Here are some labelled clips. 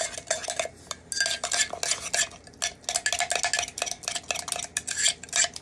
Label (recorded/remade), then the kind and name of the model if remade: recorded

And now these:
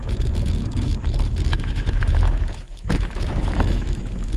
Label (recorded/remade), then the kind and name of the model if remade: remade, autoencoder, DAC-VAE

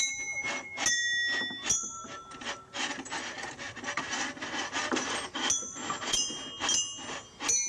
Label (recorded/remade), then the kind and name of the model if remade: recorded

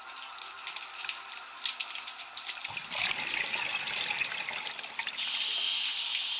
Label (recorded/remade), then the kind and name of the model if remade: recorded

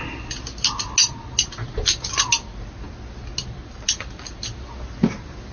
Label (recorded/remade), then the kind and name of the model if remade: recorded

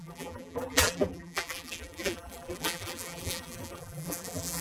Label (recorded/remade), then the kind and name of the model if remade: remade, vocoder, BigVGAN v2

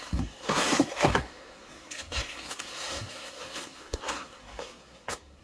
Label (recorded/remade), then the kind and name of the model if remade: remade, codec, SNAC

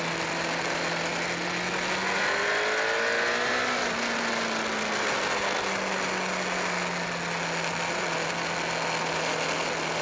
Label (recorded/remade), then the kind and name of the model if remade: recorded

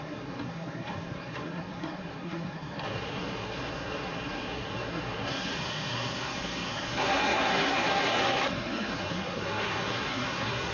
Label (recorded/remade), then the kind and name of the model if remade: remade, codec, SNAC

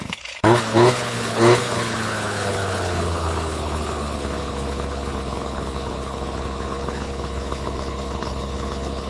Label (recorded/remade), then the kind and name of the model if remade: remade, codec, HILCodec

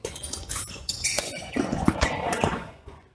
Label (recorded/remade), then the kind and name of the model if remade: remade, vocoder, Vocos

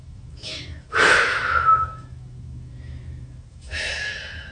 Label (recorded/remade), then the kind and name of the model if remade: remade, autoencoder, DAC-VAE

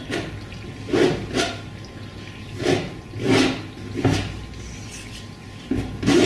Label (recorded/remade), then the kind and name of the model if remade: recorded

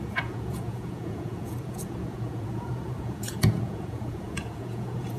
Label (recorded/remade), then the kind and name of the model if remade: remade, vocoder, Vocos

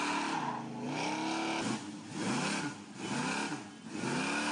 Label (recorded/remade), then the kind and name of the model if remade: recorded